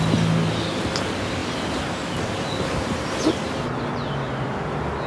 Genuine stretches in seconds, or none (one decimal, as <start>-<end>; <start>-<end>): 0.0-5.1